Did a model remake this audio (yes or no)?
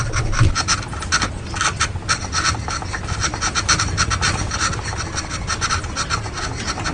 no